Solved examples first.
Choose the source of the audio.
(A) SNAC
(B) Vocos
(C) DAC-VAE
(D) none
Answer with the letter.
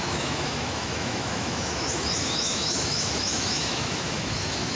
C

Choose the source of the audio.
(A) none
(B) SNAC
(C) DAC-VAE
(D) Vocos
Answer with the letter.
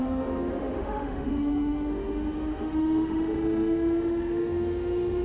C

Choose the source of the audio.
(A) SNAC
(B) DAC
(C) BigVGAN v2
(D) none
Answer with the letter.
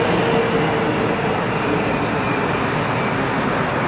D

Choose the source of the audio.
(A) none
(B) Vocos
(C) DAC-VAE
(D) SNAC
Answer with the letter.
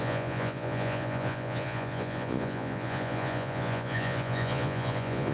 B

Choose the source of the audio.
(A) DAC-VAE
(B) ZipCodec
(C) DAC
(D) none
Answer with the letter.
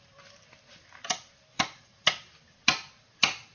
D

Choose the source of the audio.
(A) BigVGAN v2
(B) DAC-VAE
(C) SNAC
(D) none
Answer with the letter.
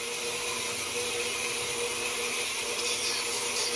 D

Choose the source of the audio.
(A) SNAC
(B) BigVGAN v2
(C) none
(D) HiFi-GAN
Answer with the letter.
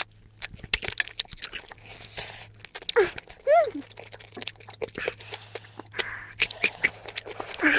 C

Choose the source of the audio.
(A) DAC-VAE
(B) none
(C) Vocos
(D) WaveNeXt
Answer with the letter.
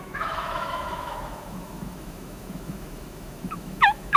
A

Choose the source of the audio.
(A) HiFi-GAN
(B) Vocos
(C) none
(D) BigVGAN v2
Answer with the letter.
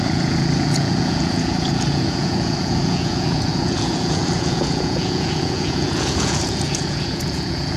B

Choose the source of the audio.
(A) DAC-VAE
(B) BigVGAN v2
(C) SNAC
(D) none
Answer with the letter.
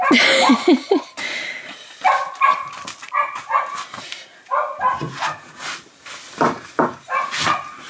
D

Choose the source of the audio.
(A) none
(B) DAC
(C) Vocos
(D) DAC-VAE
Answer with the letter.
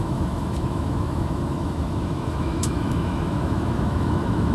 D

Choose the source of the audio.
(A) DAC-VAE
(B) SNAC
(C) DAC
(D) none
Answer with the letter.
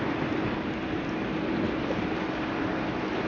D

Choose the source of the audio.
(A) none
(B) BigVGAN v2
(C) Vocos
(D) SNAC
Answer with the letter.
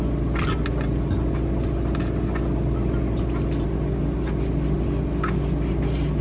A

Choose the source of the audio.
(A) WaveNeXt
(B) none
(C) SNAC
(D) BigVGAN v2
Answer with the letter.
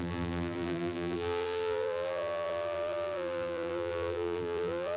D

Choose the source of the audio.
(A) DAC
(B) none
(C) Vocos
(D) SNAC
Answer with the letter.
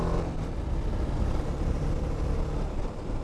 B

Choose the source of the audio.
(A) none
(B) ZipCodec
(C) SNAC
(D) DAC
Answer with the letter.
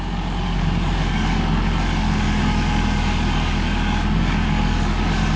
D